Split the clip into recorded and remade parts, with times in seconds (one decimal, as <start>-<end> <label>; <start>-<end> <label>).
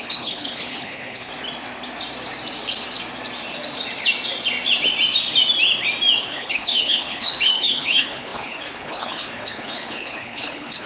0.0-1.3 remade; 1.3-6.2 recorded; 6.2-10.9 remade